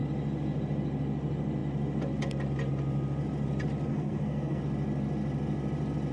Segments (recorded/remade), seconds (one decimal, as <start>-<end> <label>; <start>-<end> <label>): 0.0-3.9 recorded; 3.9-4.6 remade; 4.6-6.1 recorded